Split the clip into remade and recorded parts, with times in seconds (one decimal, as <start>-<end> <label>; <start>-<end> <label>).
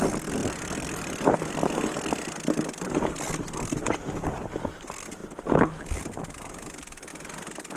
0.0-7.8 recorded